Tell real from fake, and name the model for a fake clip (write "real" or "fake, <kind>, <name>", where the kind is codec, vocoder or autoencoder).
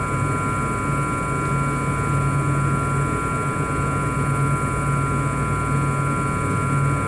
real